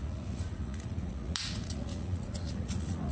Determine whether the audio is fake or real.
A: fake